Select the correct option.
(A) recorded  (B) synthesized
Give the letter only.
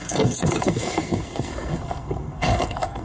B